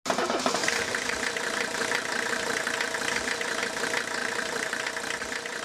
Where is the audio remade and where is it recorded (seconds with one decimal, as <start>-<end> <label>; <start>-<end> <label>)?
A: 0.0-0.6 recorded; 0.6-3.6 remade; 3.6-4.2 recorded; 4.2-4.9 remade; 4.9-5.6 recorded